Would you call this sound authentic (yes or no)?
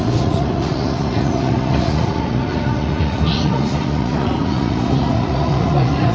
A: no